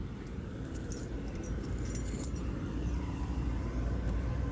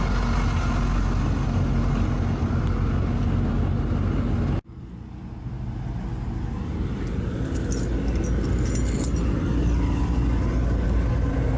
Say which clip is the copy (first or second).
first